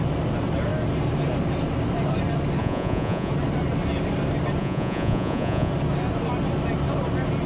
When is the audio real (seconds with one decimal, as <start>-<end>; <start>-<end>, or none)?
0.0-2.6; 3.3-4.6; 5.7-7.5